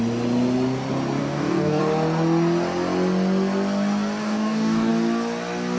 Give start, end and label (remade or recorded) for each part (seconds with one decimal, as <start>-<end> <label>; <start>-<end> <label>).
0.0-1.2 recorded; 1.2-1.8 remade; 1.8-4.2 recorded; 4.2-4.9 remade; 4.9-5.8 recorded